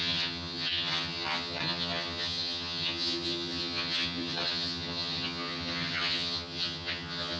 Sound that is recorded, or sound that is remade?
remade